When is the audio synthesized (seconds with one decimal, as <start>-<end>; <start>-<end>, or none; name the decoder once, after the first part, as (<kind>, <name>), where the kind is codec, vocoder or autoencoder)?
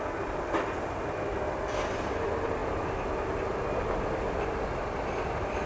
none